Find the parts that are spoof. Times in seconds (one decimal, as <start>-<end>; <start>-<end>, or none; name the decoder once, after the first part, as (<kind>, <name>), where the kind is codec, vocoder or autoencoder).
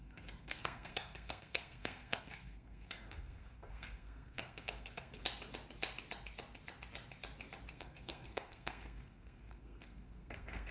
0.0-5.2 (codec, SNAC); 7.7-10.7